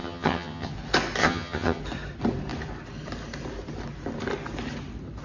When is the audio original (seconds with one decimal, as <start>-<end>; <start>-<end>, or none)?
0.7-1.2; 1.8-5.2